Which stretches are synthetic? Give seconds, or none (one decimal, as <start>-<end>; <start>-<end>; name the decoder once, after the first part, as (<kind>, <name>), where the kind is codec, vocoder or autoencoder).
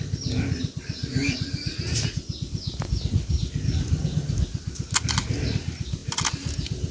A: none